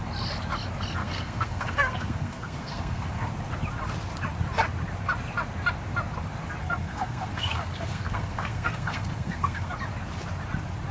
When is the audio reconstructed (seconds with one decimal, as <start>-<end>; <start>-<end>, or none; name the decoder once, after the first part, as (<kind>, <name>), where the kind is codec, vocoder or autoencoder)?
1.0-3.3 (codec, SNAC); 6.6-9.7